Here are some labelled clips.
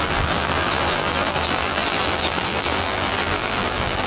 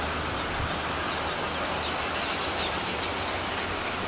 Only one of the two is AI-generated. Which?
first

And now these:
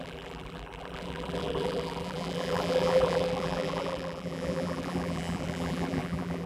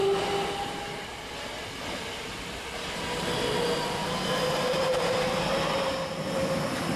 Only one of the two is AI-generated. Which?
first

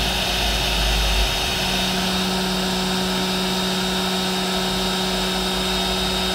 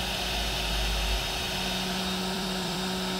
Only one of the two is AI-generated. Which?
second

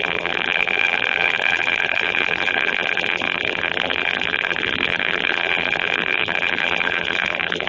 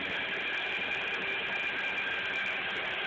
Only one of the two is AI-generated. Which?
first